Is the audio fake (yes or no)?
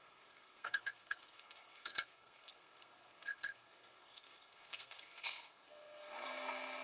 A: yes